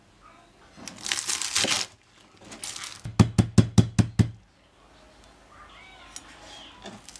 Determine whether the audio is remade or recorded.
recorded